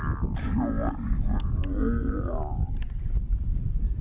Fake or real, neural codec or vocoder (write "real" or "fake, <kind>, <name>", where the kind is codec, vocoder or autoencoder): real